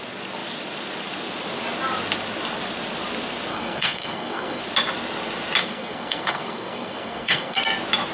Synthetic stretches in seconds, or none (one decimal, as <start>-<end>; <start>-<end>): 3.5-4.6; 5.6-7.6